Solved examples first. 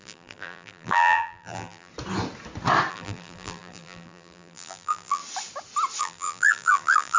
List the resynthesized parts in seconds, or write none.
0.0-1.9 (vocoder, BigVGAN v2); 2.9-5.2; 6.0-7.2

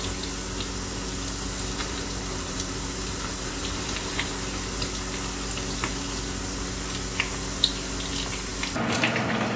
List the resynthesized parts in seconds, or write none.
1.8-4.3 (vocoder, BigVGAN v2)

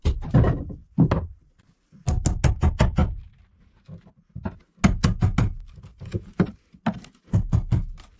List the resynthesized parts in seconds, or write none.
5.9-6.6 (vocoder, BigVGAN v2)